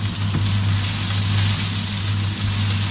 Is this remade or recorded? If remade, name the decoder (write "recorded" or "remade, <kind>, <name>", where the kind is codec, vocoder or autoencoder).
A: recorded